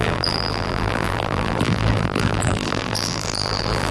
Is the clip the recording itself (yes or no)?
no